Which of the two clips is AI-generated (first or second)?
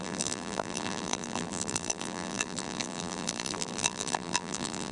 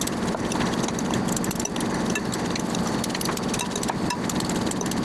first